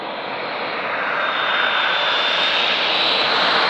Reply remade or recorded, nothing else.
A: recorded